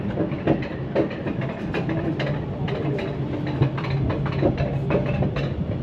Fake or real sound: real